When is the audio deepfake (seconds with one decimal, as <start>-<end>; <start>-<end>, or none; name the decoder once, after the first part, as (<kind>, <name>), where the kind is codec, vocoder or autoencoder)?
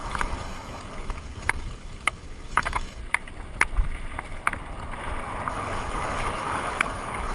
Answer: 0.0-3.0 (codec, DAC); 5.5-7.3